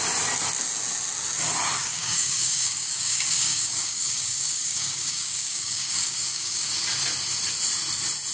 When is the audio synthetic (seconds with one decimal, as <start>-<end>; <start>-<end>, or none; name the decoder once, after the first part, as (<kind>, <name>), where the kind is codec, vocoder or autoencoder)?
1.8-6.7 (codec, DAC)